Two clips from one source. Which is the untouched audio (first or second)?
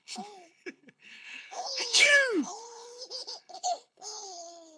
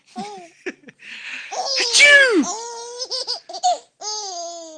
second